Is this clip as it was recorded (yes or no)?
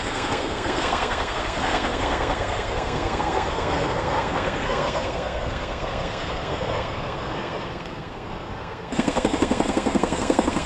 no